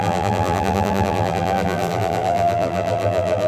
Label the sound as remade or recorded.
remade